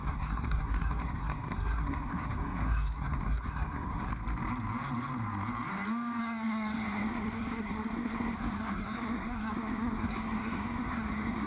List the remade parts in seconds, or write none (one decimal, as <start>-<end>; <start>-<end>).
0.0-4.1; 6.2-11.5